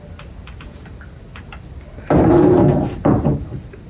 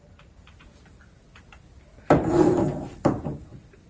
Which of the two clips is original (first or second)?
first